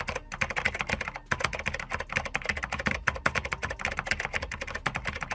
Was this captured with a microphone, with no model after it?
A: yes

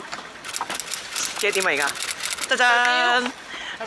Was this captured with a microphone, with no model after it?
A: yes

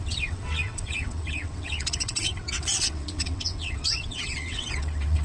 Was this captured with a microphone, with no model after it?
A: no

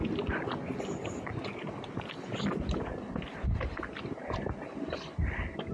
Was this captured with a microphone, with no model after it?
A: yes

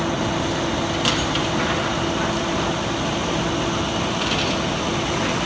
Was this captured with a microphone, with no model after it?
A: yes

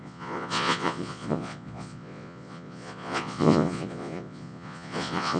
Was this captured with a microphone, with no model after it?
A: no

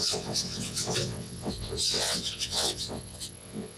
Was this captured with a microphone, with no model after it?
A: no